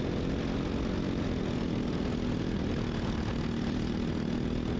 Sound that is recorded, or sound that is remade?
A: recorded